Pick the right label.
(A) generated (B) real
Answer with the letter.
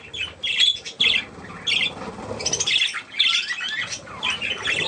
B